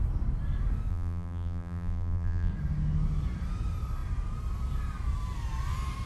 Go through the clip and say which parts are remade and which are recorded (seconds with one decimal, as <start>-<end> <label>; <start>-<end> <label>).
0.0-0.9 recorded; 0.9-2.5 remade; 2.5-6.1 recorded